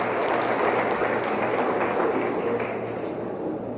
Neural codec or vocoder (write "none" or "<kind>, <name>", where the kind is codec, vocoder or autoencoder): none